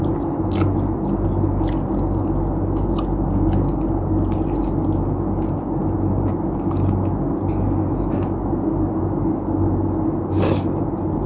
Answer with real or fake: real